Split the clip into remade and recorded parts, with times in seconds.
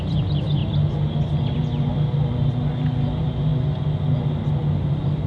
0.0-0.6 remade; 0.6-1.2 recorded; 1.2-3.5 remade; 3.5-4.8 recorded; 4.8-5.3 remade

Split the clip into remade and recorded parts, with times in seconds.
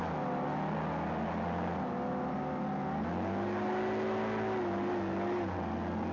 0.0-6.1 recorded